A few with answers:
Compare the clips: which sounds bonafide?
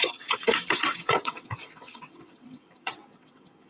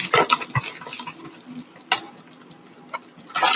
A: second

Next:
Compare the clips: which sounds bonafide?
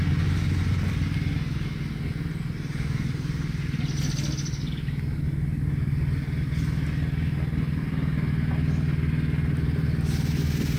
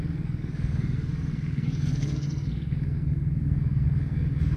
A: first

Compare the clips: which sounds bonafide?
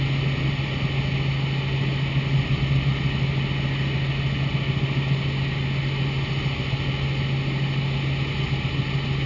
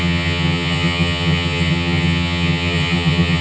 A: first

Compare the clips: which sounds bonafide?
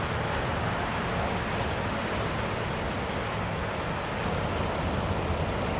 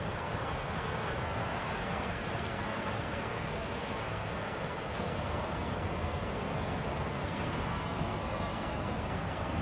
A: first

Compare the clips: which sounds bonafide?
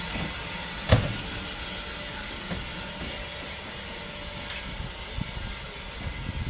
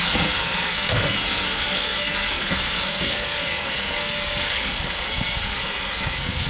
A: first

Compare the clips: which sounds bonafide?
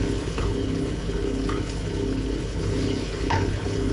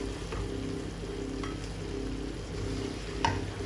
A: second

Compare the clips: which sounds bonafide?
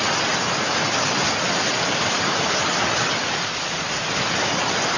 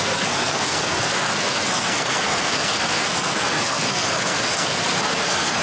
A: first